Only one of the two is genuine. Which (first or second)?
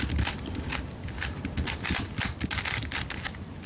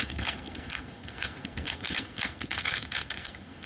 first